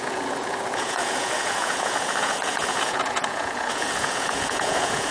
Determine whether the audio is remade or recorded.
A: remade